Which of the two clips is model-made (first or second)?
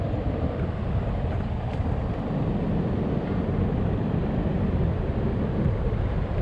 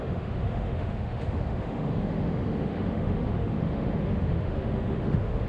second